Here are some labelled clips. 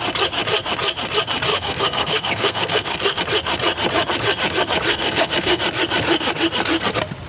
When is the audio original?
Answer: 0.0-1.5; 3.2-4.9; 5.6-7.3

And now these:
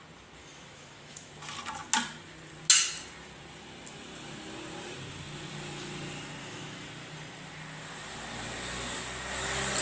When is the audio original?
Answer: 0.0-0.4; 1.3-6.4; 6.9-9.8

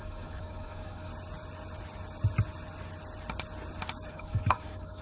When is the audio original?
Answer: 1.1-4.1

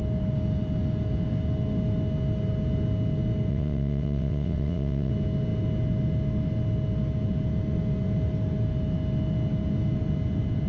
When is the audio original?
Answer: 0.0-3.5; 5.1-10.7